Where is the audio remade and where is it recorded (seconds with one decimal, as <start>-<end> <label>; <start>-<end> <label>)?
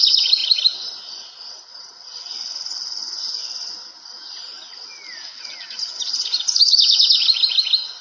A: 0.0-8.0 recorded